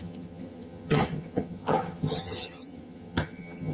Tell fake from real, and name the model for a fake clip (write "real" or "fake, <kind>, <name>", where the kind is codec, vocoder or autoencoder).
fake, vocoder, HiFi-GAN